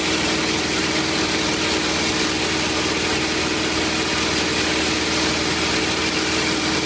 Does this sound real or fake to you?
real